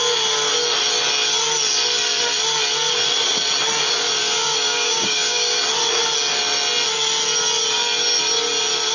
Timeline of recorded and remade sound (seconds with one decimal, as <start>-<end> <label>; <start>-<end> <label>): 0.0-4.2 recorded; 4.2-5.6 remade; 5.6-8.9 recorded